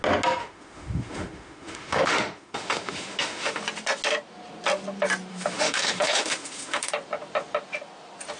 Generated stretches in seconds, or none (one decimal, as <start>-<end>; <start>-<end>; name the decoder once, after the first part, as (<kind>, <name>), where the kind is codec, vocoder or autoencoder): 0.4-3.6 (autoencoder, DAC-VAE); 5.3-6.9